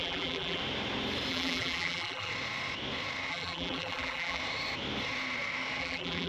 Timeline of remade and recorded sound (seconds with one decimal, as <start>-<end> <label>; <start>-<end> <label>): 0.0-0.6 remade; 0.6-1.3 recorded; 1.3-2.3 remade; 2.3-3.3 recorded; 3.3-4.4 remade; 4.4-5.8 recorded; 5.8-6.3 remade